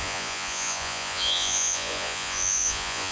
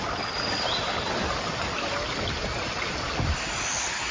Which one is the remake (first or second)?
first